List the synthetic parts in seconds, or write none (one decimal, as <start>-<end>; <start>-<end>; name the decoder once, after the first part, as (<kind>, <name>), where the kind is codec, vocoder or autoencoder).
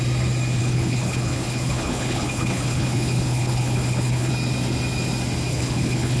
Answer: 0.6-4.3 (codec, HILCodec); 5.5-6.2